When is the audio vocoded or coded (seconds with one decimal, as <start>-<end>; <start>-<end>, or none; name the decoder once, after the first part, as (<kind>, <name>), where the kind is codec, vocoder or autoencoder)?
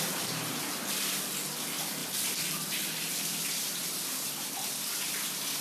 0.0-0.5 (vocoder, BigVGAN v2); 1.6-5.6